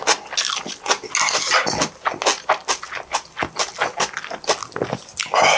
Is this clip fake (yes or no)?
no